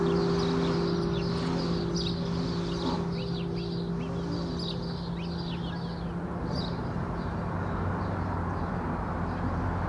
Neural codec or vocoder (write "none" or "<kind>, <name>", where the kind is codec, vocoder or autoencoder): none